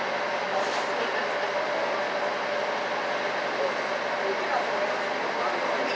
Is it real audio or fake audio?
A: real